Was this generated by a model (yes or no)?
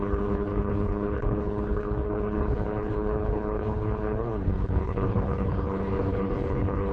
yes